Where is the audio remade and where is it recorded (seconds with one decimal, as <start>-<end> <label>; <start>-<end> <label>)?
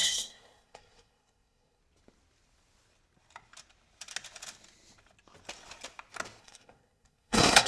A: 0.0-1.8 remade; 1.8-6.4 recorded; 6.4-7.7 remade